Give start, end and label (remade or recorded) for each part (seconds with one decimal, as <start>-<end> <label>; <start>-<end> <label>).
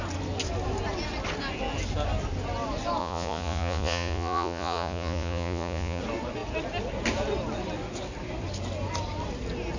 0.0-3.0 recorded; 3.0-6.0 remade; 6.0-9.8 recorded